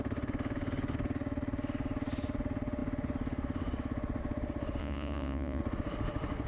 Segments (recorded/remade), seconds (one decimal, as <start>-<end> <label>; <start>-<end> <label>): 0.0-4.8 recorded; 4.8-5.6 remade; 5.6-6.5 recorded